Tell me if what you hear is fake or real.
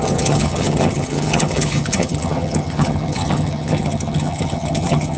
fake